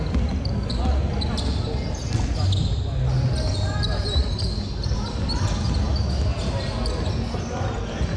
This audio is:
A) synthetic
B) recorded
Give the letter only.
B